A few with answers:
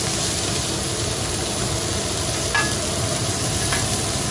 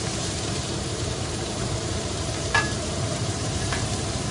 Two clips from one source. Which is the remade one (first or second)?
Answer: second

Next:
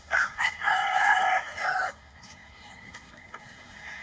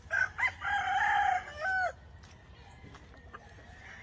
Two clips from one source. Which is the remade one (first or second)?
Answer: first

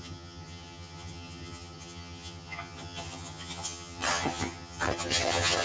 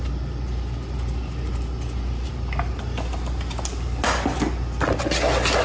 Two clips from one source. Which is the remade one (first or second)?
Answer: first